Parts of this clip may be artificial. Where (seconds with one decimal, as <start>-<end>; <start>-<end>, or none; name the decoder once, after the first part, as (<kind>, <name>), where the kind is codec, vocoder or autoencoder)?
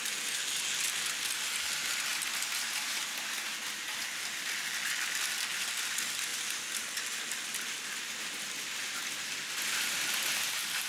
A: none